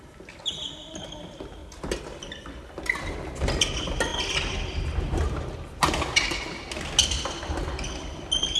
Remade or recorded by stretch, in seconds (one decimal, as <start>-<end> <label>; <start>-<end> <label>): 0.0-4.1 recorded; 4.1-4.8 remade; 4.8-8.6 recorded